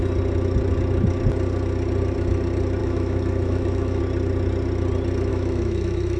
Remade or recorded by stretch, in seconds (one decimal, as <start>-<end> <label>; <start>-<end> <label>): 0.0-2.8 recorded; 2.8-4.0 remade; 4.0-5.3 recorded; 5.3-6.2 remade